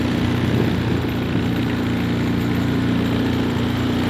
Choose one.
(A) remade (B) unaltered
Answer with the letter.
B